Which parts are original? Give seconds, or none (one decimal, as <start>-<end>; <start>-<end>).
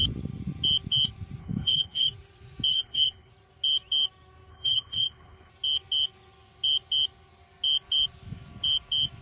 0.0-1.4; 2.1-2.7; 3.3-4.5; 5.5-9.2